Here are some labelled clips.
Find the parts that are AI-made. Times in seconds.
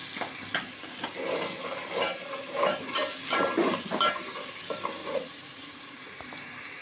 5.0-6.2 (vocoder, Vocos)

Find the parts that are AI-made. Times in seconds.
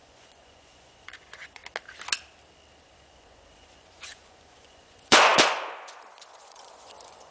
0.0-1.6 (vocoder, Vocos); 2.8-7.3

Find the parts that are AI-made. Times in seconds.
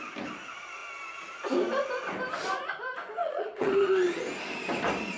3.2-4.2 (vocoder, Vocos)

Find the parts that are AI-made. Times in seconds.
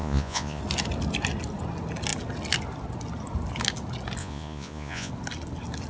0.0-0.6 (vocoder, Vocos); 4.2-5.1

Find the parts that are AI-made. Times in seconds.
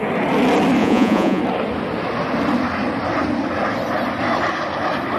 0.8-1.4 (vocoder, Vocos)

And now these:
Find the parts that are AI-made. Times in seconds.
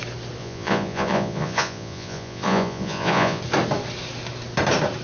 0.4-3.4 (vocoder, Vocos)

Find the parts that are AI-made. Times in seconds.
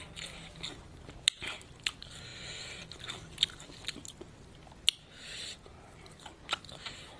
none